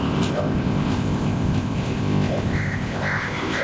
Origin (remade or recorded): remade